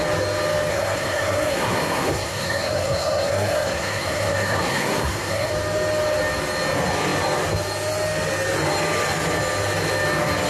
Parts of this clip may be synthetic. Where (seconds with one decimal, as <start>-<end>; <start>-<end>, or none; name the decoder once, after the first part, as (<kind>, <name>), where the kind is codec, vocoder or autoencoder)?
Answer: 0.7-5.5 (codec, SNAC)